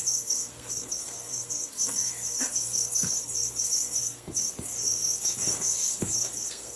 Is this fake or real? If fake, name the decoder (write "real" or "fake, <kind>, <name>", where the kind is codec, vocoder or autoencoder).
fake, codec, SNAC